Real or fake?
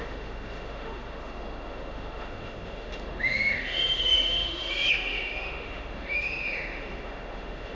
fake